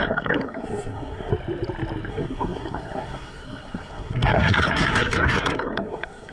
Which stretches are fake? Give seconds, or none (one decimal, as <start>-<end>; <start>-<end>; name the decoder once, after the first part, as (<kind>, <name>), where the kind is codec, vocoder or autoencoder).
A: 0.0-1.3 (codec, SNAC); 2.1-6.3